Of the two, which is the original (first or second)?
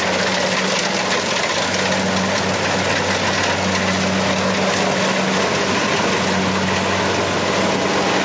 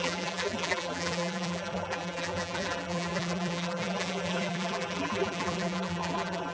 first